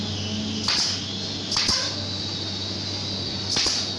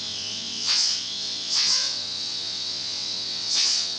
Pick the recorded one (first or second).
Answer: first